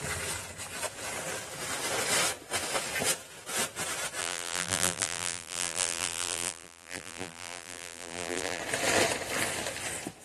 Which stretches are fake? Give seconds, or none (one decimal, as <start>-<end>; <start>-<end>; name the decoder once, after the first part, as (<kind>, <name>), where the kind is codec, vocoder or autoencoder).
4.2-8.6 (vocoder, BigVGAN v2)